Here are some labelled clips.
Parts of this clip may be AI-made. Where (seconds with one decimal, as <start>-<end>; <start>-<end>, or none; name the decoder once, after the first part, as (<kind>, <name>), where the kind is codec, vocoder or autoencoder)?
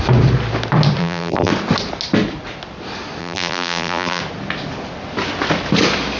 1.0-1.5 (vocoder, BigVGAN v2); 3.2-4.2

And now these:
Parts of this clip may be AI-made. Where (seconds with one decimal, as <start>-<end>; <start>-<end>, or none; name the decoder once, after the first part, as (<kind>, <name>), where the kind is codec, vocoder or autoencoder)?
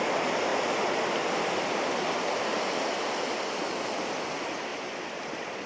4.7-5.3 (vocoder, BigVGAN v2)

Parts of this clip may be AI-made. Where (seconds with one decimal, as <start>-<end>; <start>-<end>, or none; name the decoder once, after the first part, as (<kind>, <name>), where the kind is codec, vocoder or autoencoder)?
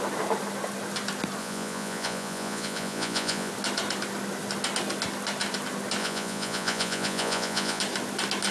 1.4-3.5 (vocoder, Vocos); 6.0-7.8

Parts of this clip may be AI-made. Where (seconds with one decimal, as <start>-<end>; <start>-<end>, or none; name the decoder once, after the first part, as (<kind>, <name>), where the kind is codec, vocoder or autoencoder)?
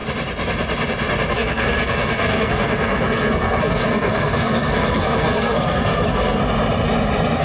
1.3-6.4 (codec, SNAC)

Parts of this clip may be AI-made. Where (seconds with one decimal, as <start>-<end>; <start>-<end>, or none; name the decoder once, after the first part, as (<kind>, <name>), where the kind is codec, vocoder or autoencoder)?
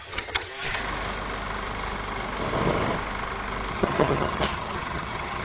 0.0-0.5 (vocoder, HiFi-GAN); 3.7-5.4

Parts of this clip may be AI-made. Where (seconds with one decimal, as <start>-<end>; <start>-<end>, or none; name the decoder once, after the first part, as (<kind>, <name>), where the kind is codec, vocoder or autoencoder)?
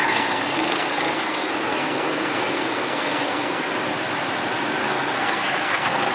0.0-3.7 (codec, SNAC); 4.8-6.1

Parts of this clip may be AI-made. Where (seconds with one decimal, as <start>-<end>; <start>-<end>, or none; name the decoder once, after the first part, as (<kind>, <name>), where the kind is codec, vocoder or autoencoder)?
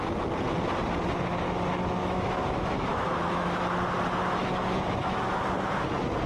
2.0-3.6 (autoencoder, DAC-VAE); 4.4-5.4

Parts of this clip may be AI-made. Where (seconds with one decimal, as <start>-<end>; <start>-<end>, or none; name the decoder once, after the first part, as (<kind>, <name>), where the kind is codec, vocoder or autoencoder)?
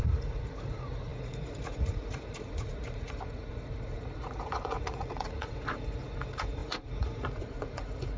0.0-8.2 (vocoder, Vocos)